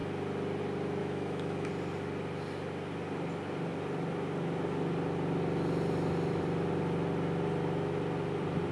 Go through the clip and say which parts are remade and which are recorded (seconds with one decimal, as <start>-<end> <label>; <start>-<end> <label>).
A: 0.0-1.0 recorded; 1.0-1.7 remade; 1.7-8.7 recorded